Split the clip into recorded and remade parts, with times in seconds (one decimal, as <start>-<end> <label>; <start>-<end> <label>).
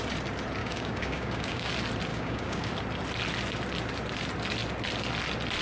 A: 0.0-0.6 recorded; 0.6-1.7 remade; 1.7-2.1 recorded; 2.1-2.7 remade; 2.7-5.6 recorded